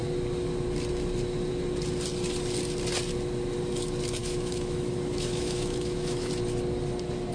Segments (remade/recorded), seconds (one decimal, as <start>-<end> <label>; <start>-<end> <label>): 0.0-4.2 recorded; 4.2-6.3 remade; 6.3-7.3 recorded